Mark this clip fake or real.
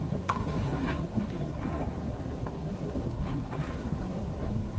fake